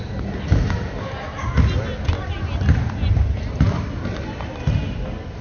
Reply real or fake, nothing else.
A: real